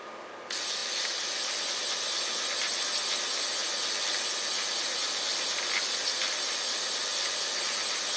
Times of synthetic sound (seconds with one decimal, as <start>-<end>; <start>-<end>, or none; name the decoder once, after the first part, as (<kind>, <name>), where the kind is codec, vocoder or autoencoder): none